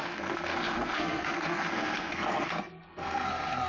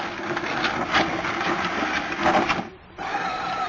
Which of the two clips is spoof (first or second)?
first